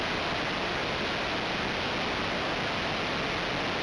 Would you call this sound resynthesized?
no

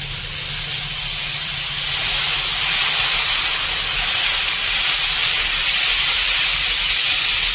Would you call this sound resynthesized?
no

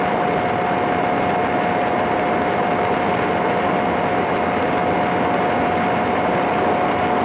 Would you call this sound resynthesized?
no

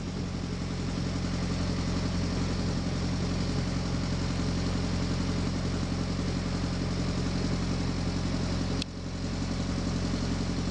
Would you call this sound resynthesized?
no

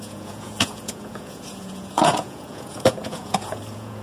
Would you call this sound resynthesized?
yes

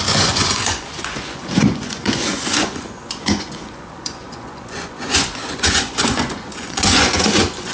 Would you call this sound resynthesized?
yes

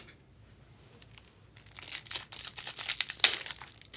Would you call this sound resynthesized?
no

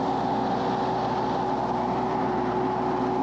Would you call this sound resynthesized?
no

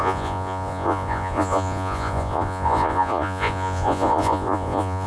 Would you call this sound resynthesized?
yes